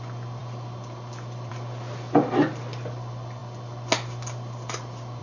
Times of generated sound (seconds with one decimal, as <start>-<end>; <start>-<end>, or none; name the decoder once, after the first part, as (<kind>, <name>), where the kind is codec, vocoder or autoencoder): none